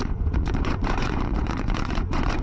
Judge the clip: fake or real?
fake